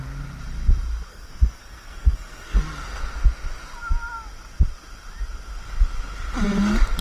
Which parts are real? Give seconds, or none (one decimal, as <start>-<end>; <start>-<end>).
0.0-1.1; 2.6-7.0